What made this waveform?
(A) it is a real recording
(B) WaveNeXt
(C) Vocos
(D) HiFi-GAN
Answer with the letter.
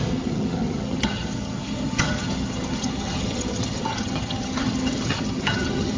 D